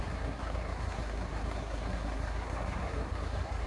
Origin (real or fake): fake